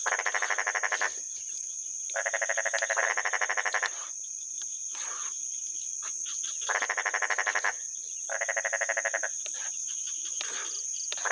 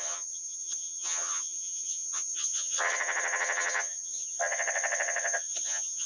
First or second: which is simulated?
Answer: second